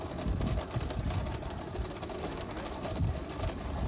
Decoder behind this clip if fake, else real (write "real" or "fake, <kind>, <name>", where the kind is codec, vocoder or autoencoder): real